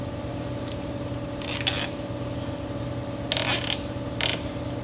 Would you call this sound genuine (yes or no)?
yes